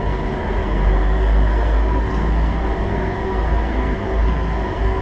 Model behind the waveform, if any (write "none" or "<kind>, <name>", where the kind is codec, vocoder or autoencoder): codec, SNAC